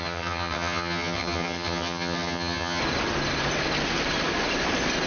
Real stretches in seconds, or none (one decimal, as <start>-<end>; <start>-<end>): 2.8-5.1